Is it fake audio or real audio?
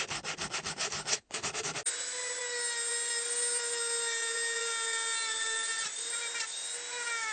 real